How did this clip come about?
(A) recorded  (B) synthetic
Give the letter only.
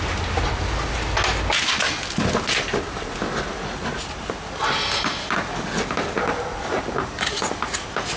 A